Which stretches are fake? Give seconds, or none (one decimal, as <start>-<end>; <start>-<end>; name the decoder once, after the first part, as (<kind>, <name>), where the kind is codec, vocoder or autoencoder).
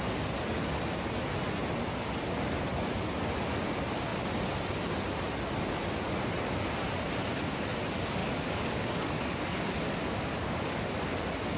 8.2-10.9 (codec, DAC)